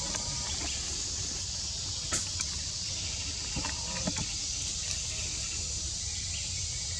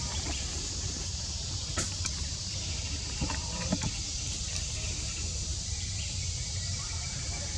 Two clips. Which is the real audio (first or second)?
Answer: first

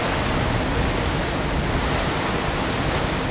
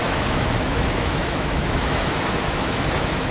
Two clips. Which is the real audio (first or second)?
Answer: first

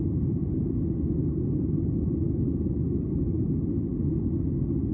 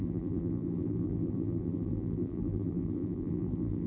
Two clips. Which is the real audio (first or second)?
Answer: first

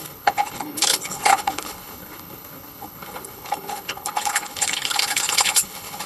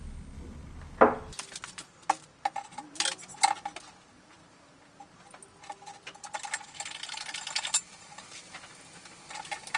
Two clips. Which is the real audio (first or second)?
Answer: second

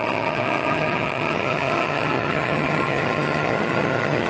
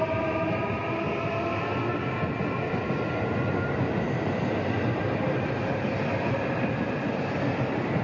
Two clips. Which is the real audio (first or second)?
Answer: second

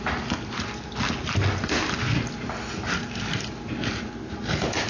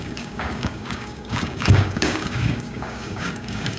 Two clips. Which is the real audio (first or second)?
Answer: first